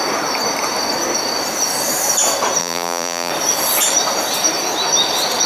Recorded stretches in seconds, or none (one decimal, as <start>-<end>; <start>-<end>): 0.0-2.6; 3.3-5.5